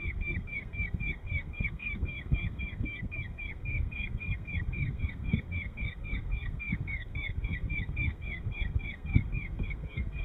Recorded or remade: remade